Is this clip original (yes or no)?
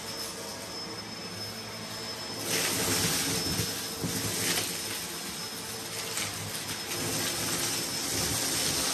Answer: yes